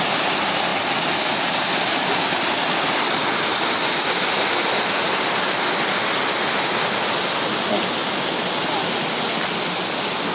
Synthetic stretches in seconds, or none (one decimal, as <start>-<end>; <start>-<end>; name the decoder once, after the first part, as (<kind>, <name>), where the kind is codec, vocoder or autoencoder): none